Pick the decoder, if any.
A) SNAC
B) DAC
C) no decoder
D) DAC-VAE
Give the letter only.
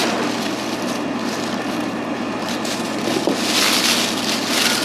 C